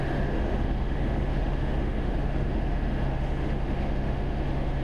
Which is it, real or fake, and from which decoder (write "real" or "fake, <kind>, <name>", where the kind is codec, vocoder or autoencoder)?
fake, autoencoder, DAC-VAE